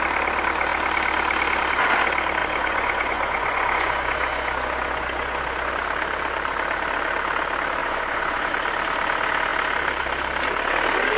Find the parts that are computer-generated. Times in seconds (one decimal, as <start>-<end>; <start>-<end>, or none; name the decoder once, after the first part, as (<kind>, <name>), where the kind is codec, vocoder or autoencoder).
2.4-5.7 (vocoder, Vocos); 7.8-8.5